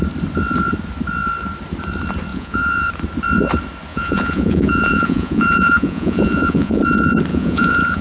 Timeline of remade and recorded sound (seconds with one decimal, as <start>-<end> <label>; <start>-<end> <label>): 0.0-2.3 recorded; 2.3-2.9 remade; 2.9-3.9 recorded; 3.9-6.8 remade; 6.8-7.3 recorded; 7.3-8.0 remade